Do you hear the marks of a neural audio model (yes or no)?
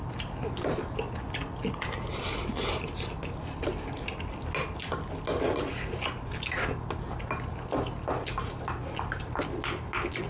no